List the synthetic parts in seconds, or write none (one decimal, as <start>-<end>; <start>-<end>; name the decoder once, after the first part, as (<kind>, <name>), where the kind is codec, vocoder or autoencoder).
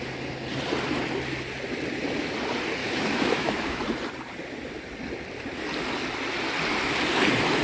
2.8-3.8 (autoencoder, DAC-VAE)